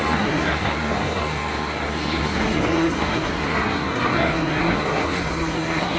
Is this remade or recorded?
remade